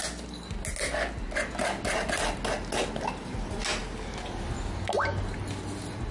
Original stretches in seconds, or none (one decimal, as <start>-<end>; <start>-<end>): 0.0-6.1